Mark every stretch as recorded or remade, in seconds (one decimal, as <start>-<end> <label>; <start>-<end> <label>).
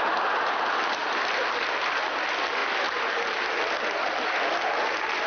0.0-5.3 recorded